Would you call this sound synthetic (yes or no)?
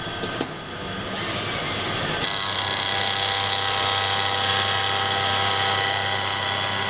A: no